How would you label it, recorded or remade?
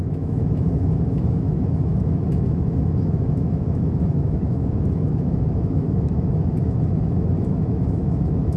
remade